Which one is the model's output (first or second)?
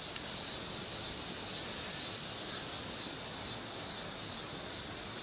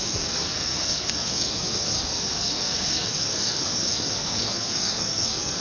second